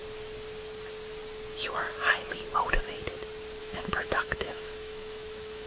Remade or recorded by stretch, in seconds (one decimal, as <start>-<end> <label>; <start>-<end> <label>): 0.0-3.6 recorded; 3.6-5.7 remade